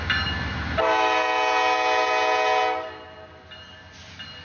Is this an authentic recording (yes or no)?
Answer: yes